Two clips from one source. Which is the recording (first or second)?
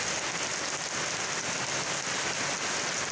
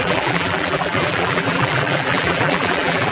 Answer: first